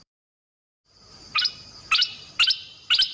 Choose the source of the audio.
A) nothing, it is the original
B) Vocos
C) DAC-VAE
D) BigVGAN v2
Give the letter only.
A